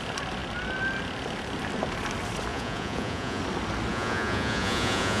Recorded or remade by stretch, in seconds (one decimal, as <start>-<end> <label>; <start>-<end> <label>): 0.0-2.5 recorded; 2.5-3.4 remade; 3.4-3.9 recorded; 3.9-5.2 remade